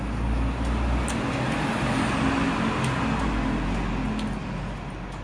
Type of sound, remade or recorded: recorded